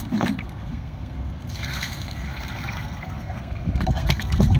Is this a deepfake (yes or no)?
yes